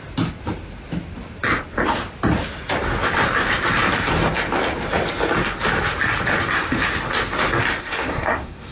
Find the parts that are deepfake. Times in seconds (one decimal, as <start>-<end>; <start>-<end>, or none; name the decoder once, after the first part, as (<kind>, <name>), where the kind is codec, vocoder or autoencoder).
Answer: 7.8-8.7 (codec, SNAC)

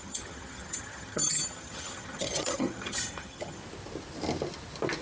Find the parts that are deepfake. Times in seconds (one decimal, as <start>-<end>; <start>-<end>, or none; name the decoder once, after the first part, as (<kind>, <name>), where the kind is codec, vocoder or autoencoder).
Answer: 0.0-3.6 (vocoder, HiFi-GAN)

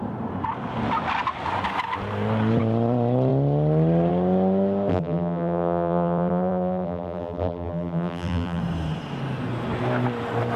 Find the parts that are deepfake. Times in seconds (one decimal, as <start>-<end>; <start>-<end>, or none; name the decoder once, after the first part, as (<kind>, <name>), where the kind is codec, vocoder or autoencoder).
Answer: 4.9-8.6 (vocoder, BigVGAN v2)

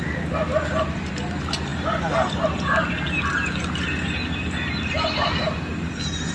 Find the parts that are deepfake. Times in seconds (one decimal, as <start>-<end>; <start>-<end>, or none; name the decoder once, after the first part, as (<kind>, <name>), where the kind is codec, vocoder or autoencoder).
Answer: none

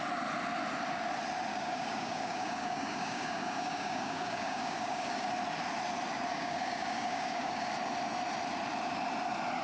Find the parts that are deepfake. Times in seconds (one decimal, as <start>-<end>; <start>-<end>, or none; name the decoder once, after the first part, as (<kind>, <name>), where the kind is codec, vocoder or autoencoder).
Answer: 1.5-5.3 (codec, DAC); 6.3-7.7